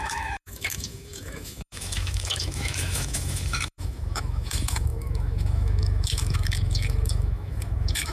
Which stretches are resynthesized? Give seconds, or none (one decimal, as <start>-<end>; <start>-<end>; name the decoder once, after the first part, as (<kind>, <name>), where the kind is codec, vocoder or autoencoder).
0.0-8.1 (autoencoder, DAC-VAE)